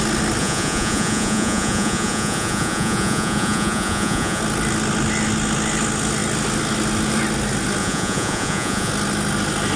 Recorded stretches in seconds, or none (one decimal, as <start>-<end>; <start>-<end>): 0.0-0.4; 4.4-7.8; 8.9-9.8